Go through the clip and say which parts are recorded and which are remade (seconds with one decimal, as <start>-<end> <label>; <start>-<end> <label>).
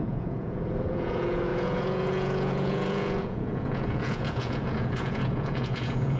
0.0-6.2 remade